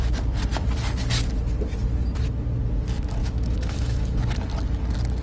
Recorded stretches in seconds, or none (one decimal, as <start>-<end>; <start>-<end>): 0.0-3.2; 4.3-5.2